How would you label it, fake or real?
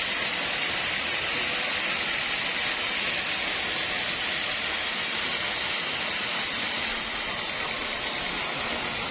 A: real